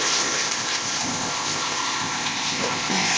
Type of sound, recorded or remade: remade